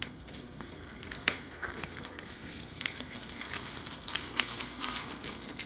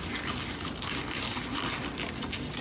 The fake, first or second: first